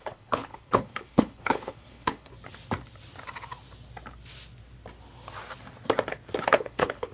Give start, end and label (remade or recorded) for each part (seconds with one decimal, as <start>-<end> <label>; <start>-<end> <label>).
0.0-2.3 remade; 2.3-6.5 recorded; 6.5-7.1 remade